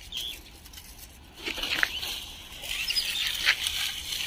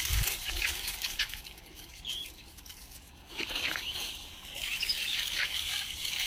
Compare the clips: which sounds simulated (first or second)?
second